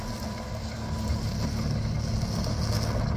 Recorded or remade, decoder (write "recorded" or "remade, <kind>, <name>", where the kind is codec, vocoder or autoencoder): recorded